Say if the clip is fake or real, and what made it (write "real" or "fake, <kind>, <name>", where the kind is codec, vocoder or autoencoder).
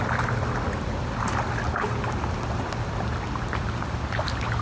real